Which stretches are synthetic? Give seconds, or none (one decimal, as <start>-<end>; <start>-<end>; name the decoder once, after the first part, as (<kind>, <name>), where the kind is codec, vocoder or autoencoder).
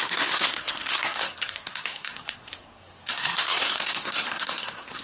0.0-5.0 (codec, SNAC)